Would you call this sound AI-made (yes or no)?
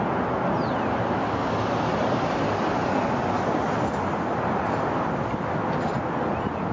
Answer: no